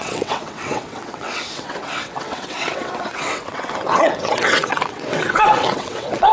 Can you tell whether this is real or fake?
fake